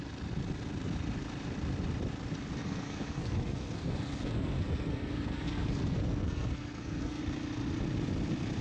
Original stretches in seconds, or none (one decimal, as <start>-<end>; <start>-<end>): 0.0-2.6; 7.2-8.6